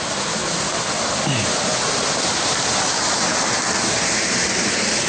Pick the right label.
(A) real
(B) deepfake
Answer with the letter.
A